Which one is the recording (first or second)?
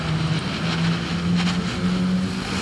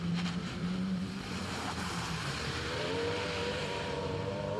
first